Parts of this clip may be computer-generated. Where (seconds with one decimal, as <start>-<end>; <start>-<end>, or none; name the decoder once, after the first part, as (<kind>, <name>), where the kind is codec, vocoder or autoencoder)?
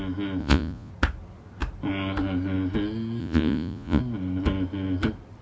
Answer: 0.4-0.9 (vocoder, Vocos); 3.2-4.0